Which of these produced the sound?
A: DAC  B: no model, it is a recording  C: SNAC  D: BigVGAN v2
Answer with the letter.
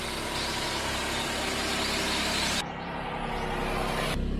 B